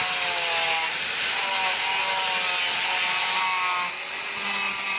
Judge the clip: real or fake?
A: real